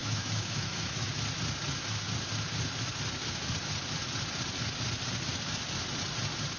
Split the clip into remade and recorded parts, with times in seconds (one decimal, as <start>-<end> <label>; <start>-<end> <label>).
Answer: 0.0-1.1 remade; 1.1-6.6 recorded